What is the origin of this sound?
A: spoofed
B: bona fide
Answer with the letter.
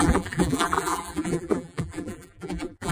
A